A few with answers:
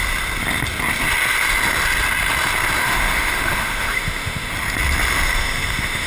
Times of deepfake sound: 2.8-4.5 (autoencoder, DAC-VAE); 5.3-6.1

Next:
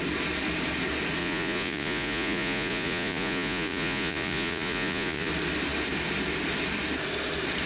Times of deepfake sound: 1.2-5.3 (vocoder, Vocos)

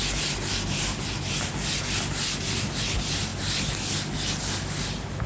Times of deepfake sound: none

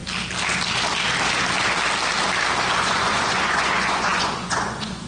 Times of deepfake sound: 2.8-5.1 (vocoder, Vocos)

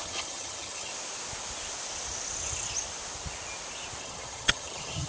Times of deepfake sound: 0.0-0.9 (vocoder, HiFi-GAN); 4.0-5.1

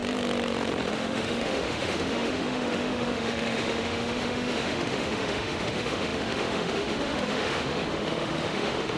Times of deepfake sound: 0.9-9.0 (autoencoder, DAC-VAE)